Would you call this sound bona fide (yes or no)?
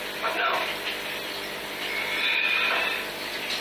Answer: yes